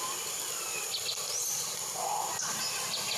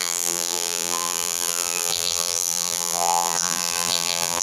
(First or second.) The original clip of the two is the first